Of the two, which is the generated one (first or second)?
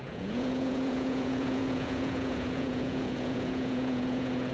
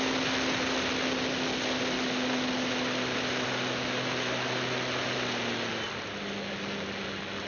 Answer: first